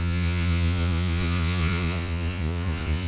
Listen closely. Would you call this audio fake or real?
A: fake